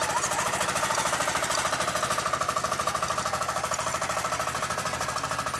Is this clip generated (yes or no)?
no